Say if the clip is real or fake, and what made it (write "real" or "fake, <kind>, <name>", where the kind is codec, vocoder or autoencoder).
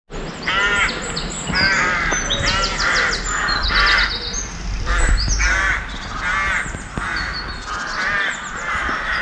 real